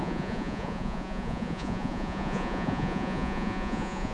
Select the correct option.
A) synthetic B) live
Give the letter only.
A